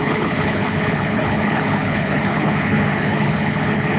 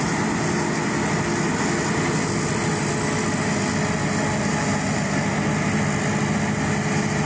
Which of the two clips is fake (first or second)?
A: first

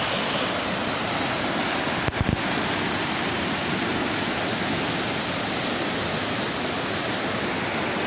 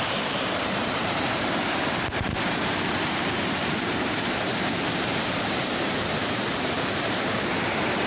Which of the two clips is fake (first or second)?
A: second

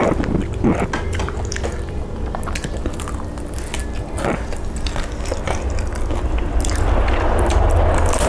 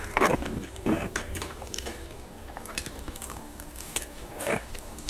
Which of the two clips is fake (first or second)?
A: second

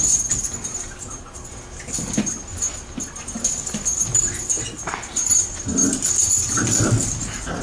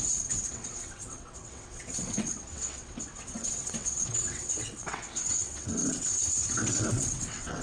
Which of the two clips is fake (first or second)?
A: second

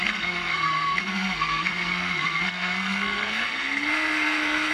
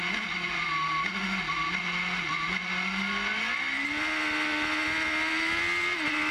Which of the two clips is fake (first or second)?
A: first